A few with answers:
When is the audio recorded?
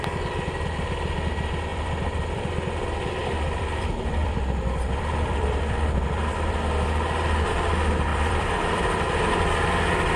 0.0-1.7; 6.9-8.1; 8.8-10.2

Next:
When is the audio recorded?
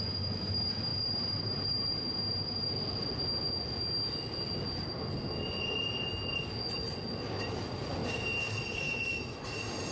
0.0-0.9; 2.7-8.0; 9.1-9.9